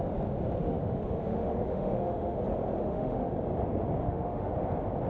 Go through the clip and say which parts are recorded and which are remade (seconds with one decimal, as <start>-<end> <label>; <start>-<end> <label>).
0.0-0.6 recorded; 0.6-2.4 remade; 2.4-2.8 recorded; 2.8-3.3 remade; 3.3-4.0 recorded; 4.0-4.5 remade; 4.5-5.1 recorded